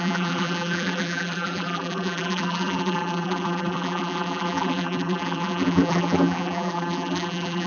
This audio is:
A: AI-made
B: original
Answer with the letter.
A